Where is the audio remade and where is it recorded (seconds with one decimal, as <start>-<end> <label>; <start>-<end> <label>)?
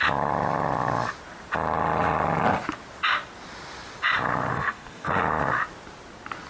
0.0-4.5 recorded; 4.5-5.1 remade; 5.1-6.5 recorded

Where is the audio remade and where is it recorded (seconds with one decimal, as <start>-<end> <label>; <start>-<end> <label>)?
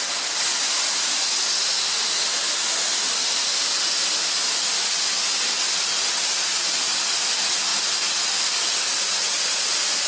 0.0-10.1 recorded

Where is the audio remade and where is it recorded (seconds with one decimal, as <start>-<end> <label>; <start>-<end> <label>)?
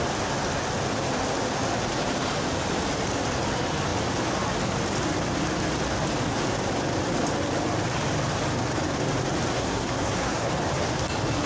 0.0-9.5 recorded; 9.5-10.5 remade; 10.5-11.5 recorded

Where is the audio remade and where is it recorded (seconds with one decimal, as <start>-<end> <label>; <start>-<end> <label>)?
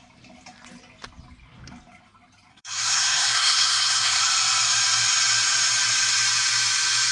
0.0-2.5 recorded; 2.5-4.2 remade; 4.2-7.1 recorded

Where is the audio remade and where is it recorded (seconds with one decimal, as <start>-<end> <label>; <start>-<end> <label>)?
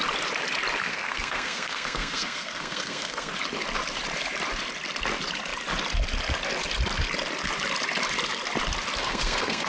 0.0-0.9 recorded; 0.9-3.3 remade; 3.3-9.0 recorded; 9.0-9.7 remade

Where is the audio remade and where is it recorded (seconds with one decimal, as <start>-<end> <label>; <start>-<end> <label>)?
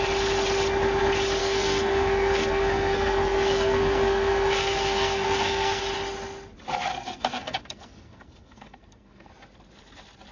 0.0-1.4 recorded; 1.4-5.8 remade; 5.8-6.9 recorded; 6.9-9.3 remade; 9.3-10.3 recorded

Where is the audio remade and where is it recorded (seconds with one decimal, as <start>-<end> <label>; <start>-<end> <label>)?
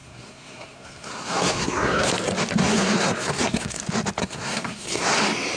0.0-2.1 remade; 2.1-2.6 recorded; 2.6-3.8 remade; 3.8-4.2 recorded; 4.2-5.0 remade; 5.0-5.6 recorded